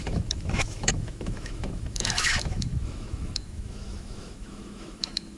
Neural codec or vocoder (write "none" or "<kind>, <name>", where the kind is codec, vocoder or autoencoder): autoencoder, DAC-VAE